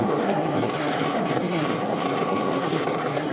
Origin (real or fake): fake